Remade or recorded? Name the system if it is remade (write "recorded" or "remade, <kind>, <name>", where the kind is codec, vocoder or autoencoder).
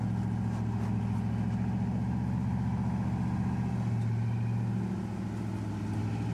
recorded